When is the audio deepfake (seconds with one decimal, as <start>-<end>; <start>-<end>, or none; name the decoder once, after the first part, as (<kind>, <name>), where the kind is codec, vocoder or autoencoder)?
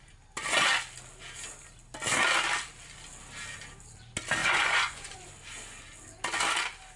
4.4-5.2 (vocoder, Vocos)